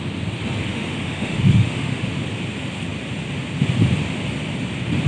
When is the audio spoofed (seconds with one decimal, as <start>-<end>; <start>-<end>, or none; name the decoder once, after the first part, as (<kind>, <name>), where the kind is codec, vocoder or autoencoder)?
0.7-2.2 (autoencoder, DAC-VAE)

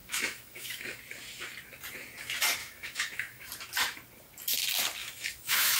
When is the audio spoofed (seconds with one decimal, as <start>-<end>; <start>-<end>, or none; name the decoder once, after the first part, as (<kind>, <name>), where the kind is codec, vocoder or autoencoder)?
0.0-1.0 (autoencoder, DAC-VAE); 2.6-3.5; 5.0-5.8

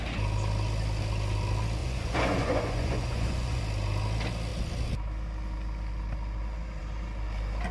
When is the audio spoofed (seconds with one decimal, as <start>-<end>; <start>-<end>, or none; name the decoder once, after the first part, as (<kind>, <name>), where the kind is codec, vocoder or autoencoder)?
1.8-3.6 (vocoder, Vocos)

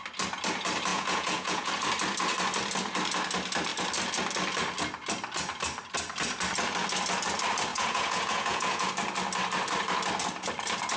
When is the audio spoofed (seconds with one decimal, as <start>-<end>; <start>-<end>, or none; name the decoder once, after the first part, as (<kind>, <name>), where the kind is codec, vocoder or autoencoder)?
0.9-1.7 (vocoder, Vocos); 7.7-8.9

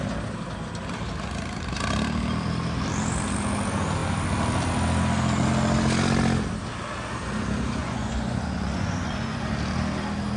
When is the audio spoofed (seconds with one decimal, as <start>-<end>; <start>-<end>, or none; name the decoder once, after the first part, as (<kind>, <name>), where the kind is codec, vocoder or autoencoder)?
7.8-9.5 (vocoder, Vocos)